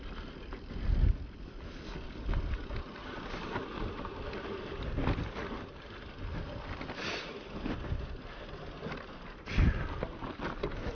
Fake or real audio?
real